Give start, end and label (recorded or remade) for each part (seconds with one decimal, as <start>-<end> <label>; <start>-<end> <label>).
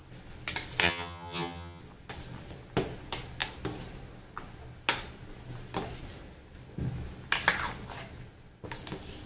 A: 0.0-0.8 recorded; 0.8-1.8 remade; 1.8-9.3 recorded